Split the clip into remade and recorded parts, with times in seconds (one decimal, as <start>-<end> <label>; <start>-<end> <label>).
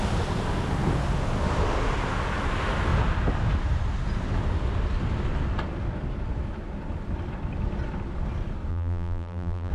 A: 0.0-8.7 recorded; 8.7-9.7 remade